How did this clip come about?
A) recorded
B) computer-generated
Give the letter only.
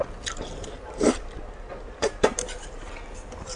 A